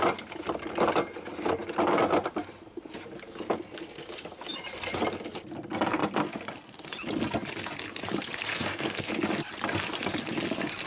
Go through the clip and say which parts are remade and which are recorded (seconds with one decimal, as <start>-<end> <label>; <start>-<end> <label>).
0.0-8.5 recorded; 8.5-9.1 remade; 9.1-10.9 recorded